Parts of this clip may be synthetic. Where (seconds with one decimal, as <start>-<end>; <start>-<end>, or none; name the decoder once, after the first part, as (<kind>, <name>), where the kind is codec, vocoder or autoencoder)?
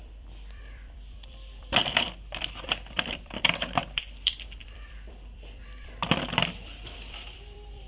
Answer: 0.0-7.9 (vocoder, BigVGAN v2)